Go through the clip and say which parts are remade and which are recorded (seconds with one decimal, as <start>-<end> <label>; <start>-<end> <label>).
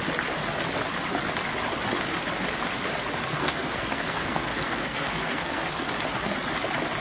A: 0.0-3.3 recorded; 3.3-5.9 remade; 5.9-7.0 recorded